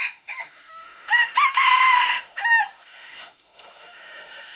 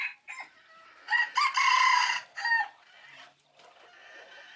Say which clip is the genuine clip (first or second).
second